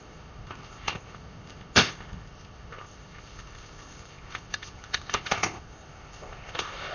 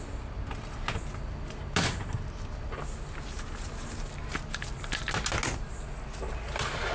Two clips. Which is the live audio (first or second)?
second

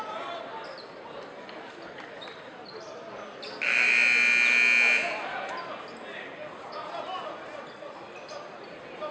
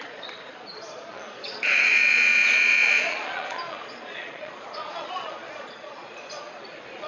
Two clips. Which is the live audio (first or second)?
first